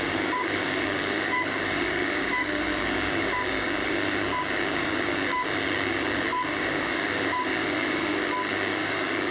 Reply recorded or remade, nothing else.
remade